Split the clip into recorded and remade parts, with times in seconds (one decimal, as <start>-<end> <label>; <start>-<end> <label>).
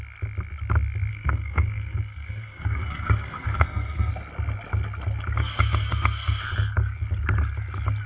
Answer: 0.0-1.1 recorded; 1.1-4.1 remade; 4.1-5.4 recorded; 5.4-6.4 remade; 6.4-8.1 recorded